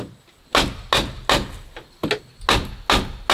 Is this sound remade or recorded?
recorded